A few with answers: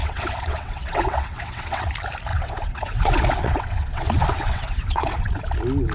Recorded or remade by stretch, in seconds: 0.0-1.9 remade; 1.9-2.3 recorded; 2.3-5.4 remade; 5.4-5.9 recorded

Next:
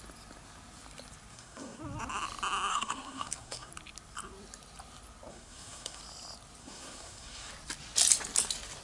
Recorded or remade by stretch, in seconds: 0.0-1.3 recorded; 1.3-1.8 remade; 1.8-2.7 recorded; 2.7-3.7 remade; 3.7-5.3 recorded; 5.3-6.0 remade; 6.0-6.6 recorded; 6.6-7.5 remade; 7.5-8.8 recorded